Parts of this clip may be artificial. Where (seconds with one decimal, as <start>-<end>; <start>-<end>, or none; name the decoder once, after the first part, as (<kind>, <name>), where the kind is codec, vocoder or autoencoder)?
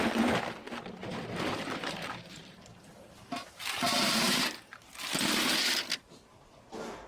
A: 1.0-4.9 (vocoder, BigVGAN v2)